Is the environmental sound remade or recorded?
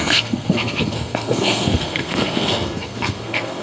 remade